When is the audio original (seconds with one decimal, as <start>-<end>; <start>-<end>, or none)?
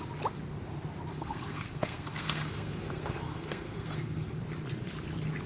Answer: 0.0-1.1; 4.4-5.5